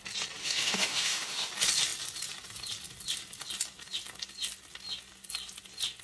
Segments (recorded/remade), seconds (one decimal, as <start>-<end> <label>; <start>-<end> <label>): 0.0-0.4 recorded; 0.4-1.5 remade; 1.5-6.0 recorded

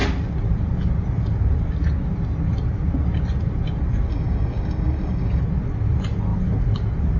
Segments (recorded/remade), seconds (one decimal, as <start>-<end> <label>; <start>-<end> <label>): 0.0-4.1 recorded; 4.1-5.4 remade; 5.4-7.2 recorded

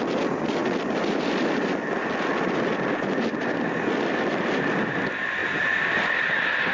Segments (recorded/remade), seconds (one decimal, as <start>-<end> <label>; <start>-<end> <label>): 0.0-6.7 recorded

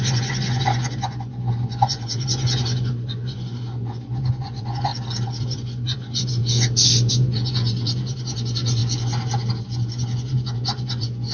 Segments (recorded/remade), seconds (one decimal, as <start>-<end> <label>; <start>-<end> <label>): 0.0-4.9 remade; 4.9-5.4 recorded; 5.4-6.4 remade; 6.4-7.1 recorded; 7.1-8.8 remade; 8.8-9.6 recorded; 9.6-11.3 remade

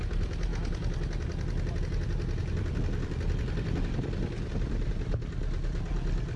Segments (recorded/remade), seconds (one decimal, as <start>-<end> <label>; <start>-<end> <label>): 0.0-2.4 recorded; 2.4-4.9 remade; 4.9-6.4 recorded

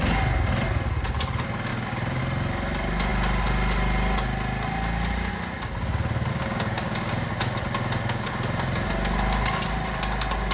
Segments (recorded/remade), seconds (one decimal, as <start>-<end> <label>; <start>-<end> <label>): 0.0-1.7 recorded; 1.7-2.2 remade; 2.2-6.3 recorded; 6.3-7.1 remade; 7.1-10.5 recorded